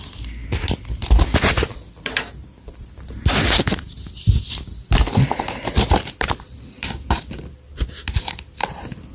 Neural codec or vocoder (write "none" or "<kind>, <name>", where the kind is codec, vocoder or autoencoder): none